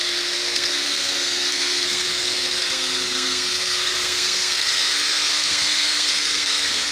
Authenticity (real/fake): fake